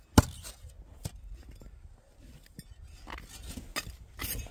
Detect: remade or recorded recorded